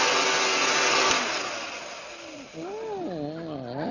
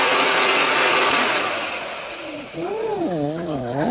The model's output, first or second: second